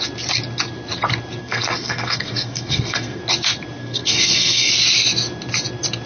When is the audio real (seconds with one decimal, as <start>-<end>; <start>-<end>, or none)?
0.0-1.4; 3.2-3.8; 4.7-6.1